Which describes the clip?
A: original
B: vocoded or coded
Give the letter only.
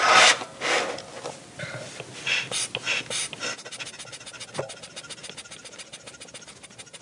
A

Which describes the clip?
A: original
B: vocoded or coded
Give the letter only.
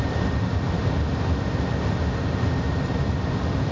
A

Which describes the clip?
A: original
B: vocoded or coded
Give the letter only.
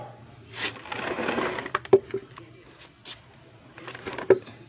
A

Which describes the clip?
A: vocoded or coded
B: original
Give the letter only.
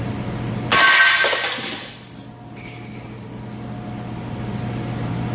B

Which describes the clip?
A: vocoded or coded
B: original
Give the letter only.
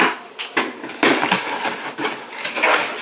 B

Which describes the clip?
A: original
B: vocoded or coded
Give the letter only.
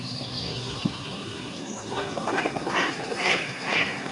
B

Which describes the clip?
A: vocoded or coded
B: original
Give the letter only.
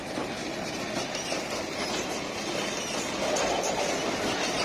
B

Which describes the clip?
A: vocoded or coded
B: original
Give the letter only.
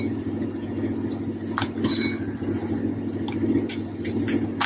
B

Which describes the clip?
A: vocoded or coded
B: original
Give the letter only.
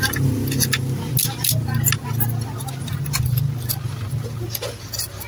B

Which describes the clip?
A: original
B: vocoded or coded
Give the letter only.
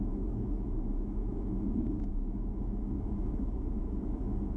B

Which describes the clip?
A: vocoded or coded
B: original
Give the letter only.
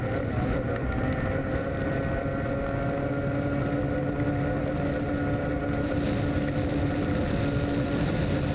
B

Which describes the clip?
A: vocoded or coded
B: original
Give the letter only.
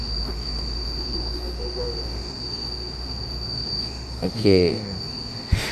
A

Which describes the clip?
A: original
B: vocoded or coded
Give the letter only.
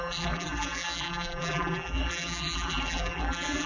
B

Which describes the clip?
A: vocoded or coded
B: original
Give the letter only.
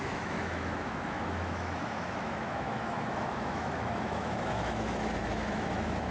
A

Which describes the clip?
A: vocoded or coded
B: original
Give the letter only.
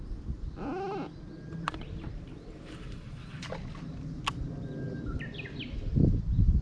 B